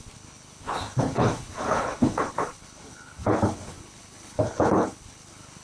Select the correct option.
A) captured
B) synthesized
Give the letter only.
B